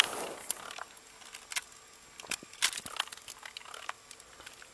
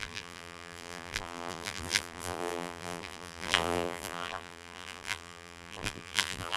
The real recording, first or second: first